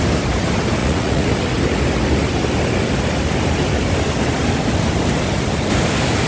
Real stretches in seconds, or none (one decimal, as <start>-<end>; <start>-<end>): 0.0-0.8; 1.3-6.3